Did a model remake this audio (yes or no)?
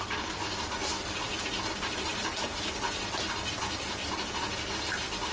no